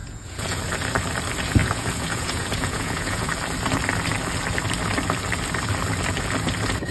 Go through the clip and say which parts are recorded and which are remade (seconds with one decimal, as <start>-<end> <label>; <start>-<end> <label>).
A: 0.0-0.6 remade; 0.6-1.6 recorded; 1.6-3.3 remade; 3.3-6.9 recorded